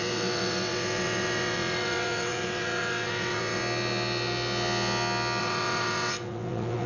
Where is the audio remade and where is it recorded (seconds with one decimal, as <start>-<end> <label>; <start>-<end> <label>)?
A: 0.0-3.6 remade; 3.6-5.4 recorded; 5.4-6.9 remade